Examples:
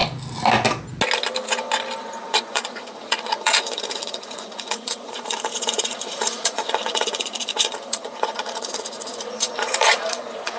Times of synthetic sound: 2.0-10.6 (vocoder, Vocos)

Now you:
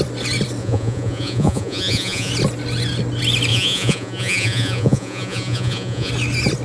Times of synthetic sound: 0.6-2.3 (vocoder, Vocos); 3.5-6.1

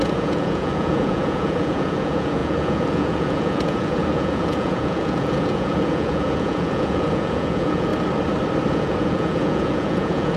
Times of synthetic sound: 0.0-7.9 (vocoder, Vocos); 8.7-10.4

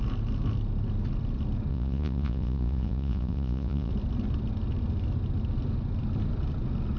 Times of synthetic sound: 1.7-3.9 (vocoder, Vocos)

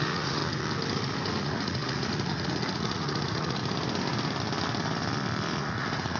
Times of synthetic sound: 0.0-0.4 (vocoder, Vocos); 1.3-3.6; 5.6-6.2

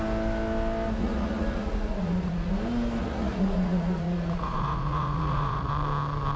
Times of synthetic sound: 1.0-2.5 (vocoder, Vocos); 3.0-5.7

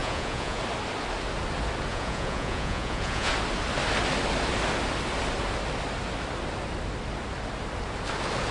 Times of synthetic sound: 0.0-0.6 (vocoder, Vocos); 1.9-3.3

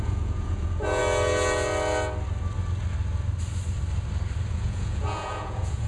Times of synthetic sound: 0.0-1.0 (vocoder, Vocos); 4.5-5.9